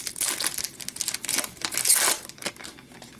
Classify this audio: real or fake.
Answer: real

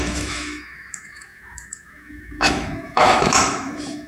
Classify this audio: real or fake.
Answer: fake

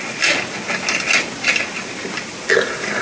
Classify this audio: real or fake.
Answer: real